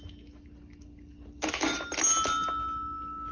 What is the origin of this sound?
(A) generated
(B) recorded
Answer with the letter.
B